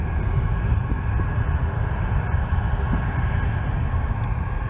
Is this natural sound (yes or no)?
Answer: yes